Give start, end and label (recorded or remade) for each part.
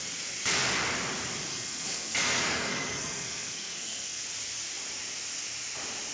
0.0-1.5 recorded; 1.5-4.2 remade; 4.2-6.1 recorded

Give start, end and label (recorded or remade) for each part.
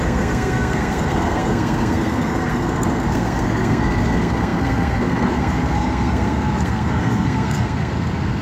0.0-8.4 remade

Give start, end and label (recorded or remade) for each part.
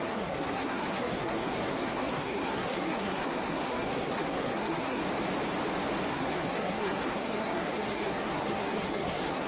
0.0-5.0 remade; 5.0-6.1 recorded; 6.1-9.5 remade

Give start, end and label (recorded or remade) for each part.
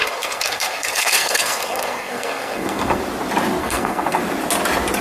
0.0-3.0 remade; 3.0-3.6 recorded; 3.6-4.2 remade; 4.2-5.0 recorded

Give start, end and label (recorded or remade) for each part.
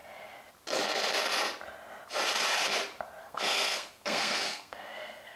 0.0-3.2 recorded; 3.2-5.4 remade